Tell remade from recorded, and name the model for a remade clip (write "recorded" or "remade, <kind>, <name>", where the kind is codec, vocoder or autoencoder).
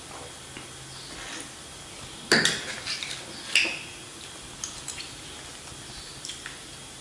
recorded